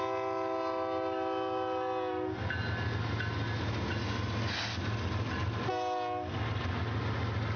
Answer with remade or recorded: recorded